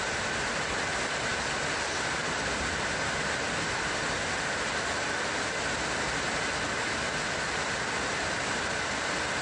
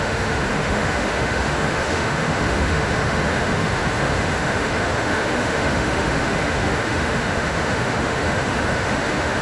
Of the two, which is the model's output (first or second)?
second